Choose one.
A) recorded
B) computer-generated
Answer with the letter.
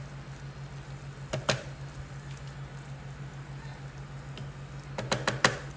A